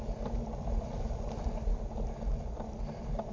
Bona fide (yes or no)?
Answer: yes